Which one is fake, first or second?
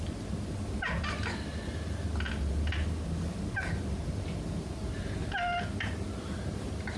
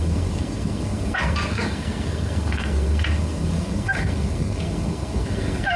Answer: second